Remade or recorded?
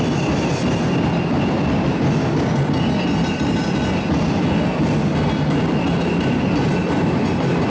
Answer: recorded